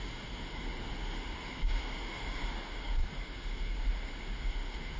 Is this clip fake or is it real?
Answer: fake